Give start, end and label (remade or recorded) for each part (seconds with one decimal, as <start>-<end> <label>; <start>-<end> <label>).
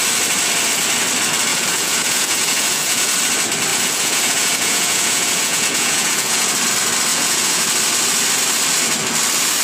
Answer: 0.0-1.5 recorded; 1.5-3.1 remade; 3.1-3.7 recorded; 3.7-6.5 remade; 6.5-7.1 recorded; 7.1-7.6 remade; 7.6-9.6 recorded